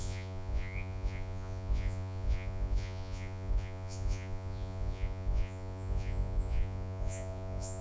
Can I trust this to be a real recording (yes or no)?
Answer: no